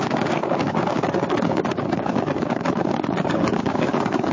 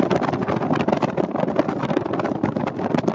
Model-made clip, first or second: first